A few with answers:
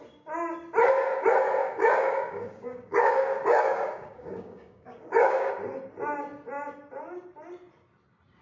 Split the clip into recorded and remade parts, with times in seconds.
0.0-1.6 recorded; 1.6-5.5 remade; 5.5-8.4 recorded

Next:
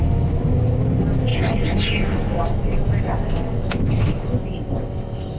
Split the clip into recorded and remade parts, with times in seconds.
0.0-5.4 recorded